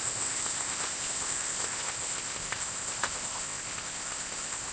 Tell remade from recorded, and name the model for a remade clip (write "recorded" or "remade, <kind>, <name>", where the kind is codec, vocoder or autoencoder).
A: remade, codec, ZipCodec